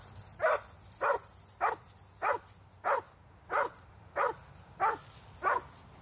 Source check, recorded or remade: recorded